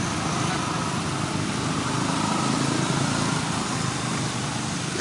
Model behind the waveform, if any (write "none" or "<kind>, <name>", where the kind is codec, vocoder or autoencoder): none